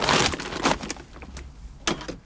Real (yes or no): yes